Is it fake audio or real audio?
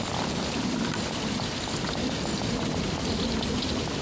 real